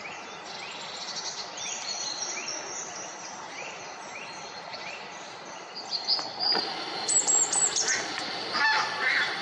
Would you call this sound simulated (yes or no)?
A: yes